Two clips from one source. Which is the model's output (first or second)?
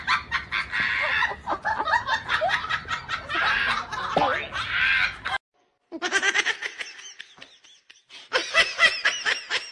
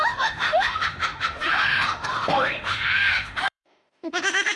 second